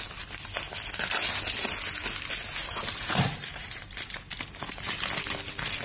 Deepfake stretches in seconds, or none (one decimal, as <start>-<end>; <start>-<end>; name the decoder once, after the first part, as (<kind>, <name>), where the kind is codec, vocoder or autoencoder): 2.6-5.1 (vocoder, BigVGAN v2)